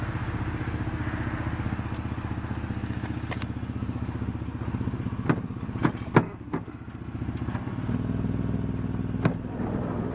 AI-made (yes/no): no